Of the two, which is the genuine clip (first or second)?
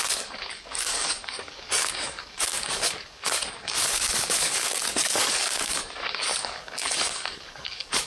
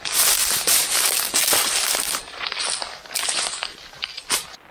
second